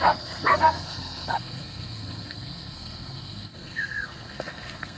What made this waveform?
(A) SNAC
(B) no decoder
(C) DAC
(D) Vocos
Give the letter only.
A